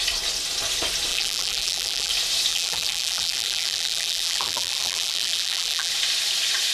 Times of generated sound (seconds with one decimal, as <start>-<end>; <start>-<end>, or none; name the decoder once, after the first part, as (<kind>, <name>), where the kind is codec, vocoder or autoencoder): 1.1-2.1 (vocoder, BigVGAN v2); 2.5-5.9